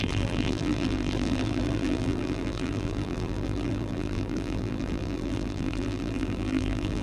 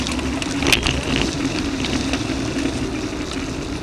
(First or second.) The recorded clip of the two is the second